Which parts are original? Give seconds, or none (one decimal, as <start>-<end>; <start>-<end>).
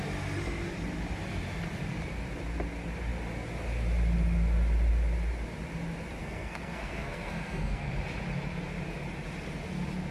0.0-6.2; 7.9-10.1